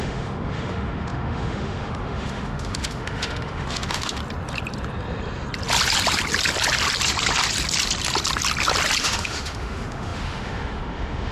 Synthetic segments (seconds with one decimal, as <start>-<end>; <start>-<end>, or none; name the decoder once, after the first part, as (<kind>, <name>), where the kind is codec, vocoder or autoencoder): 0.0-4.2 (autoencoder, DAC-VAE); 9.0-11.3